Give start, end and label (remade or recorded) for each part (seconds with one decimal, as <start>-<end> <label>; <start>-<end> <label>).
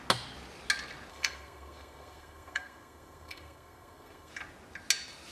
0.0-1.1 recorded; 1.1-4.3 remade; 4.3-5.3 recorded